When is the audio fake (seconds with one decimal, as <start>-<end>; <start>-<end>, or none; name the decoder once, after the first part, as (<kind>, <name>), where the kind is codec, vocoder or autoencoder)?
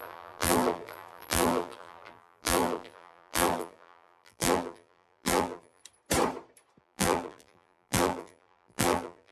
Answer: 0.0-5.8 (vocoder, BigVGAN v2); 6.8-9.3